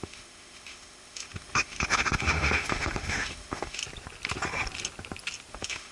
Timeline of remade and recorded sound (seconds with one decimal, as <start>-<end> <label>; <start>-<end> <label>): 0.0-3.8 remade; 3.8-5.5 recorded; 5.5-5.9 remade